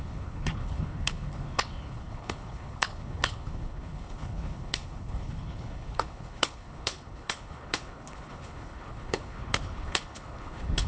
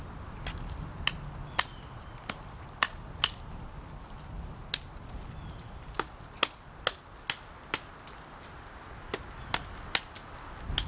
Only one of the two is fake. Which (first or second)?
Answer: first